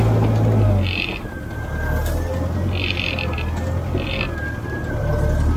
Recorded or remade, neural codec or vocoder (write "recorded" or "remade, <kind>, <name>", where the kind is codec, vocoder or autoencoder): recorded